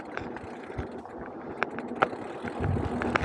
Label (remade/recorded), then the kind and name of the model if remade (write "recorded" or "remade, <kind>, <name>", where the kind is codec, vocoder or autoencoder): recorded